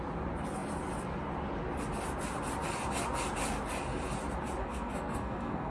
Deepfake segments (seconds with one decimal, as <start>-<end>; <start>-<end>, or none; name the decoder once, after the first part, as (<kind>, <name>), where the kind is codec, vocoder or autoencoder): 4.6-5.7 (codec, SNAC)